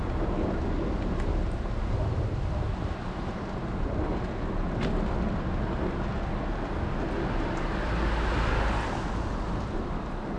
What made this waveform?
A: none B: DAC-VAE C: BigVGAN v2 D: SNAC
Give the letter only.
A